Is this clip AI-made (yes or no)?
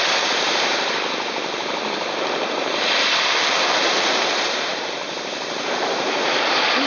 yes